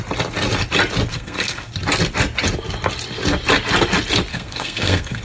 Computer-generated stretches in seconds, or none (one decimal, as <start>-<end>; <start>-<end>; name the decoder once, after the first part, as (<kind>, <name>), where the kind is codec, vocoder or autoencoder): 1.1-1.7 (codec, SNAC); 4.3-5.2